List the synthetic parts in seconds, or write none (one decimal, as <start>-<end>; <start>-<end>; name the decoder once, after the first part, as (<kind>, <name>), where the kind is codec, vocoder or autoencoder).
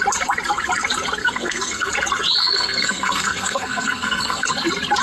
1.2-1.9 (codec, SNAC); 2.4-4.5